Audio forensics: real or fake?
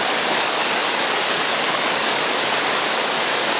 fake